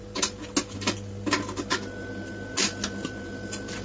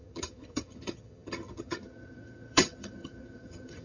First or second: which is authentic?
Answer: first